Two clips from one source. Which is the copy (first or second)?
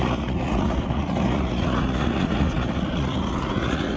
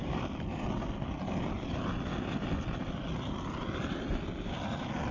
first